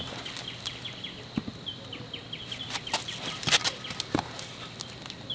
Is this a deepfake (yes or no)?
no